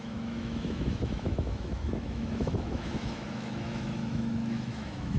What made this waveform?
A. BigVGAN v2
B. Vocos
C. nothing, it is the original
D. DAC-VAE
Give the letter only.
D